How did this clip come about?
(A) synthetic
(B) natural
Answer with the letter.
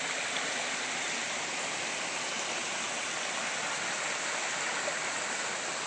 B